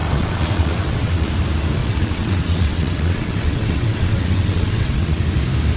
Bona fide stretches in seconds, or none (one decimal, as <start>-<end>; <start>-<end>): 1.3-1.8; 5.2-5.8